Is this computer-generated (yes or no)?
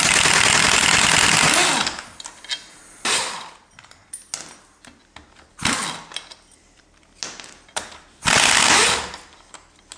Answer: no